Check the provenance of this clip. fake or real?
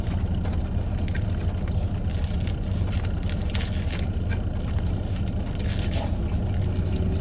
real